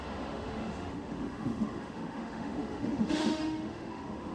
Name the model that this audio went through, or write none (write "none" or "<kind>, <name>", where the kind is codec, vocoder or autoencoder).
autoencoder, DAC-VAE